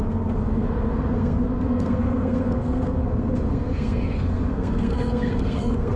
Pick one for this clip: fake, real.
fake